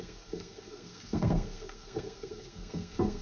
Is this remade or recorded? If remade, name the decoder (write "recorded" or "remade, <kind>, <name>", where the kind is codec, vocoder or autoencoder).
remade, codec, SNAC